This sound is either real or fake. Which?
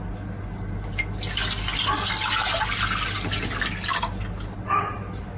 real